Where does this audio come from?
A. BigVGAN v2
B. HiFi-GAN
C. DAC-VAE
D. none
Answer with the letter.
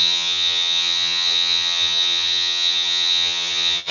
B